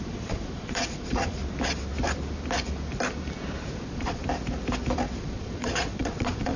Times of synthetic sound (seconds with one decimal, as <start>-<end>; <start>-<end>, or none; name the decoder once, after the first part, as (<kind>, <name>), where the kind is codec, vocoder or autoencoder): 0.0-1.4 (vocoder, Vocos); 3.7-4.2; 5.2-6.6